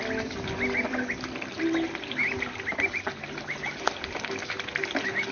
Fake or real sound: real